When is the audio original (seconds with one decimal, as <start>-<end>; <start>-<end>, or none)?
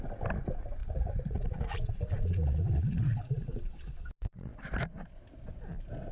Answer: 0.0-0.8; 4.5-6.1